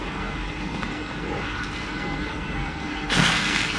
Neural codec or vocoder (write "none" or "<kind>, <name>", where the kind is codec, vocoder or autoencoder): codec, SNAC